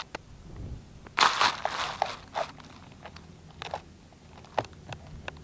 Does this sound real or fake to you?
real